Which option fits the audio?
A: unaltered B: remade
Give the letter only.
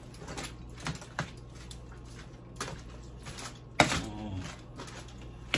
A